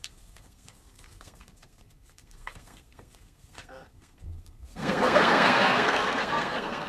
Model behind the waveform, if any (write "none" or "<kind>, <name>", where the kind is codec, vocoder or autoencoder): codec, SNAC